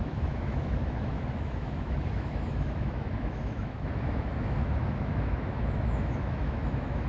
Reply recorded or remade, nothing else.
remade